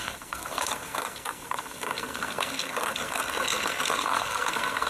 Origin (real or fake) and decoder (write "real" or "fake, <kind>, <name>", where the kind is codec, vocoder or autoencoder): fake, codec, SNAC